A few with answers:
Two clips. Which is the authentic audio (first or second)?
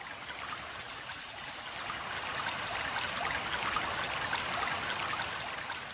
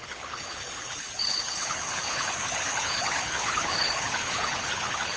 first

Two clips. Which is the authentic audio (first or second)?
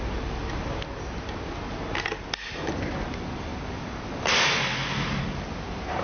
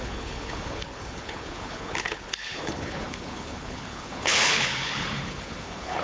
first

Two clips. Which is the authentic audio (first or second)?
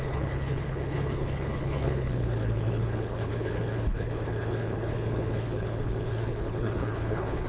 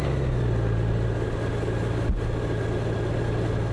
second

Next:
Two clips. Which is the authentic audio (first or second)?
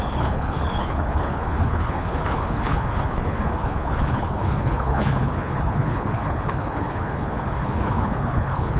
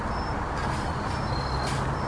second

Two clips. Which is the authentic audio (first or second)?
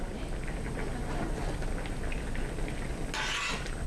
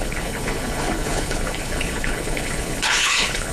first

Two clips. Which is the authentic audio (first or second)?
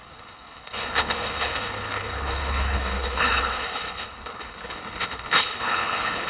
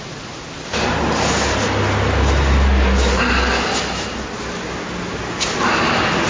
second